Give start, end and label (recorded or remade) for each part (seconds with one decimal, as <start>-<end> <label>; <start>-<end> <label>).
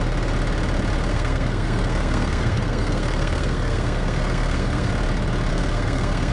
0.0-1.1 recorded; 1.1-4.9 remade; 4.9-5.5 recorded; 5.5-6.3 remade